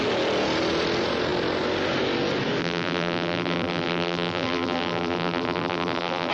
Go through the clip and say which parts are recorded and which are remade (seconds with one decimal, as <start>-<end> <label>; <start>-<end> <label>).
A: 0.0-2.6 recorded; 2.6-6.3 remade